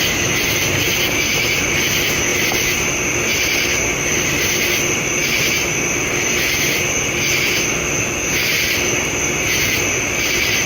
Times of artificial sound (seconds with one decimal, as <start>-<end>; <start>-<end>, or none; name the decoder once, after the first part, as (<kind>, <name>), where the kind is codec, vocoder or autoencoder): none